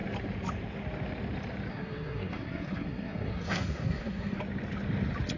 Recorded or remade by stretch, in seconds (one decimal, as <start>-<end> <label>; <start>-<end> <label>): 0.0-1.7 recorded; 1.7-4.4 remade; 4.4-5.4 recorded